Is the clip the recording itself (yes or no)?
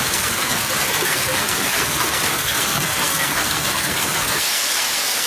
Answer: no